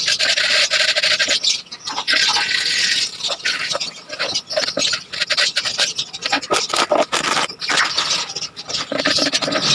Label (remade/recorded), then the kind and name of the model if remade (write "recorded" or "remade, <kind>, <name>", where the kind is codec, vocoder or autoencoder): recorded